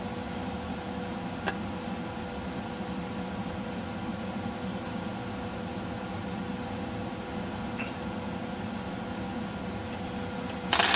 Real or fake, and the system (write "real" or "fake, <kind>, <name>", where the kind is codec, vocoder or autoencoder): real